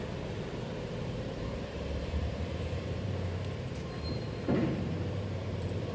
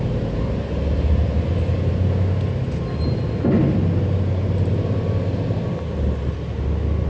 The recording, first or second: second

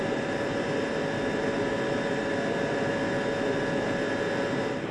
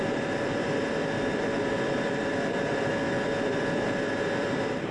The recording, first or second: first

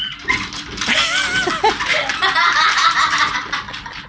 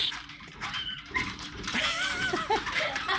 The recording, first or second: first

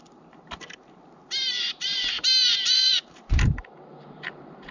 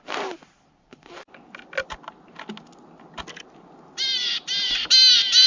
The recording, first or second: second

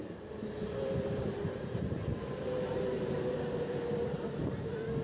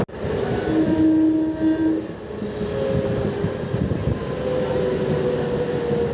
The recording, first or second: second